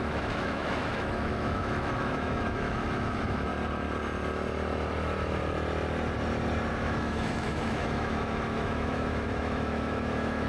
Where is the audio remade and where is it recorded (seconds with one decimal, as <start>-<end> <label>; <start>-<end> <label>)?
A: 0.0-3.5 remade; 3.5-6.7 recorded; 6.7-10.5 remade